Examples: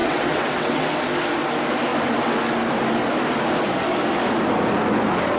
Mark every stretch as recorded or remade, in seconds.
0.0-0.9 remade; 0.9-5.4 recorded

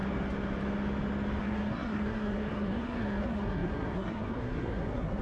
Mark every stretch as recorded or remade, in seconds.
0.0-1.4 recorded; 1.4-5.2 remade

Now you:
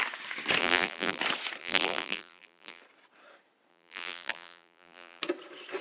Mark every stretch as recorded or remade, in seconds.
0.0-0.6 recorded; 0.6-1.2 remade; 1.2-1.6 recorded; 1.6-2.8 remade; 2.8-3.7 recorded; 3.7-5.2 remade; 5.2-5.8 recorded

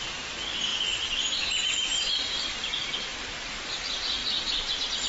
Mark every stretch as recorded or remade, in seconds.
0.0-5.1 recorded

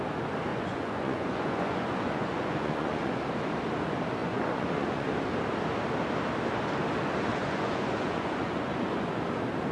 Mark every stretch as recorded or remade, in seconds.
0.0-0.5 recorded; 0.5-3.2 remade; 3.2-4.2 recorded; 4.2-5.1 remade; 5.1-7.3 recorded; 7.3-9.2 remade; 9.2-9.7 recorded

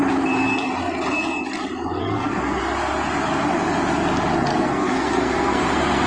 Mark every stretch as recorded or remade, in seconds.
0.0-2.0 recorded; 2.0-2.6 remade; 2.6-4.5 recorded; 4.5-6.1 remade

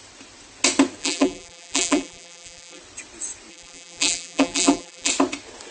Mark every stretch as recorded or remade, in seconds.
0.0-1.0 recorded; 1.0-2.8 remade; 2.8-3.5 recorded; 3.5-5.1 remade; 5.1-5.7 recorded